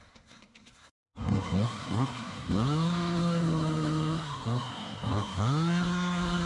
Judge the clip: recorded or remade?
remade